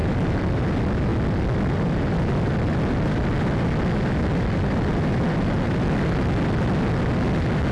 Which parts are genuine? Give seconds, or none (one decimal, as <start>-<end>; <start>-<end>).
0.5-7.7